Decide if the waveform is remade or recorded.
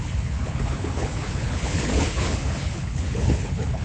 remade